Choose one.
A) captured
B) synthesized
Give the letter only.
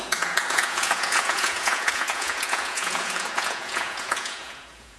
B